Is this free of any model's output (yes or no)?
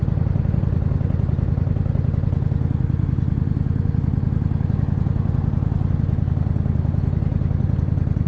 yes